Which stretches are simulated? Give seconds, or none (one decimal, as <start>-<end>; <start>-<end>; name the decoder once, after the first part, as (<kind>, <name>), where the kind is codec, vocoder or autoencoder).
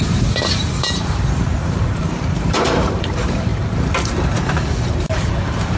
0.0-5.8 (vocoder, BigVGAN v2)